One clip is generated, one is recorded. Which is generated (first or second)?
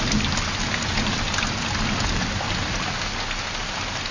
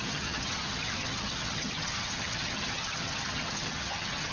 second